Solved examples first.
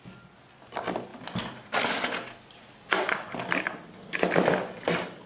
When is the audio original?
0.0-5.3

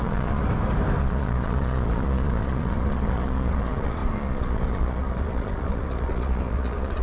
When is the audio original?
0.4-1.0